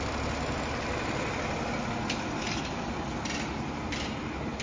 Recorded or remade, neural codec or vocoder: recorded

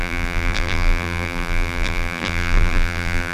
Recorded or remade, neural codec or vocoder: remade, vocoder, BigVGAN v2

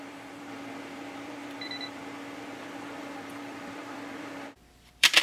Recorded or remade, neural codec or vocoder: remade, vocoder, BigVGAN v2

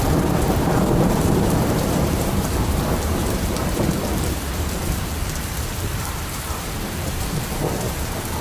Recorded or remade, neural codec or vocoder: remade, vocoder, BigVGAN v2